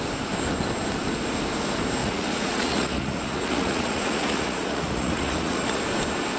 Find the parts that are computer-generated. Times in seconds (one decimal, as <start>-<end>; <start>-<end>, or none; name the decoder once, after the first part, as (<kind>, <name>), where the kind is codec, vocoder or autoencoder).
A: 2.0-5.8 (vocoder, Vocos)